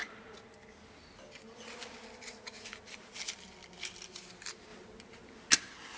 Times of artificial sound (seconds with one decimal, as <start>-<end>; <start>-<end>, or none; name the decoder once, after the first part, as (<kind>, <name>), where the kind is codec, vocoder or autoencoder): none